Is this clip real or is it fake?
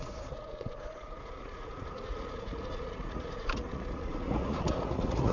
fake